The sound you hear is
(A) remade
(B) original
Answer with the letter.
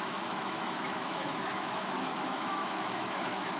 A